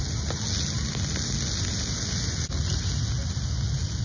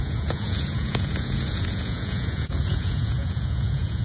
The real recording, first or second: first